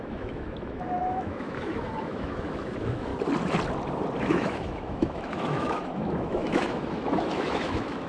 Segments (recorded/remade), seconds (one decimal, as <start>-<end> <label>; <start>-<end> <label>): 0.0-3.1 remade; 3.1-4.2 recorded; 4.2-8.1 remade